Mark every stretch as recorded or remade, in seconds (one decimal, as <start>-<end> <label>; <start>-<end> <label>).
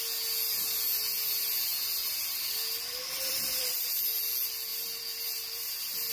0.0-1.7 recorded; 1.7-4.3 remade; 4.3-4.7 recorded; 4.7-6.1 remade